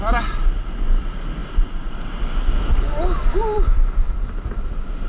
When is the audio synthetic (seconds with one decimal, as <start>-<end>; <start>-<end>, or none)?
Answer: none